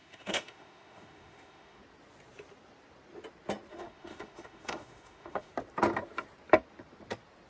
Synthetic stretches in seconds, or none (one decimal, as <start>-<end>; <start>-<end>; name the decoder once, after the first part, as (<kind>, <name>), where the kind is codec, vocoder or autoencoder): 0.0-1.8 (autoencoder, DAC-VAE); 3.7-5.5